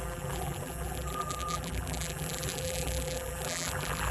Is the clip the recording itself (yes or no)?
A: no